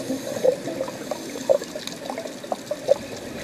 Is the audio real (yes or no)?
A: yes